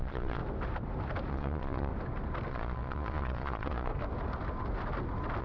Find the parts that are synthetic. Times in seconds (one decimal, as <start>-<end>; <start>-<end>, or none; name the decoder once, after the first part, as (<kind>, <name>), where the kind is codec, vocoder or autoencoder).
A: 0.0-0.4 (vocoder, Vocos); 1.3-1.9; 2.5-3.9